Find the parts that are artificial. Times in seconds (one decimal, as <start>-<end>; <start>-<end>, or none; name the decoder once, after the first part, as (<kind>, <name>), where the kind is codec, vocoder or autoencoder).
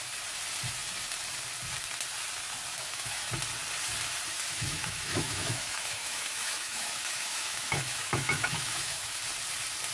2.7-3.3 (autoencoder, DAC-VAE); 4.3-9.2